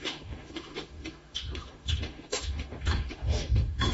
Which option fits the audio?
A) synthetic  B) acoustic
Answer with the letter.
A